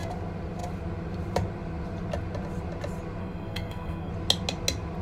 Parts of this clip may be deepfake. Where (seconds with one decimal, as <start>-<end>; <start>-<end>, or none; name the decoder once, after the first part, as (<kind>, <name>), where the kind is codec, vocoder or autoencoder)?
3.2-4.1 (codec, SNAC)